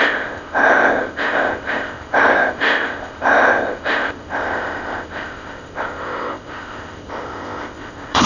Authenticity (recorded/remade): remade